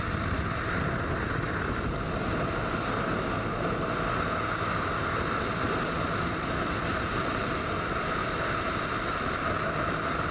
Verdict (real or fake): real